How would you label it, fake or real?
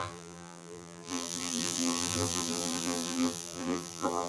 fake